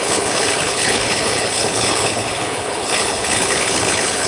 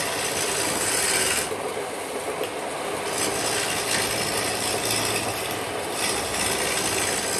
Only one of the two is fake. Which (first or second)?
first